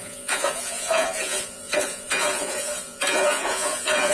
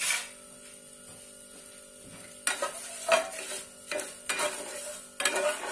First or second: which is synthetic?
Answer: first